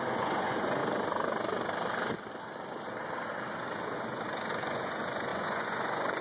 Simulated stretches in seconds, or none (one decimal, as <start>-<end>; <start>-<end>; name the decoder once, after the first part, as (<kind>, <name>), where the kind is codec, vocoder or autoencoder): 0.0-0.8 (vocoder, Vocos); 4.5-6.2